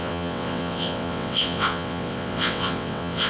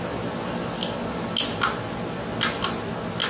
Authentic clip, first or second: second